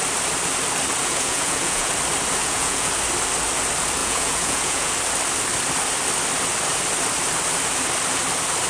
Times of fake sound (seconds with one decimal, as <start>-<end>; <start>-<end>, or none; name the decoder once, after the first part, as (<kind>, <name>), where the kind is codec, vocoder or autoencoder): 1.0-1.9 (vocoder, Vocos); 2.4-2.9; 4.0-4.9